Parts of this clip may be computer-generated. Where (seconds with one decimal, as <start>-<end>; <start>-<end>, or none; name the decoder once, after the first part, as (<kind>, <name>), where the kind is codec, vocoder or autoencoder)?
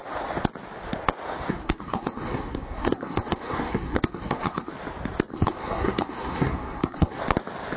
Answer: 1.5-4.7 (codec, SNAC); 5.3-7.2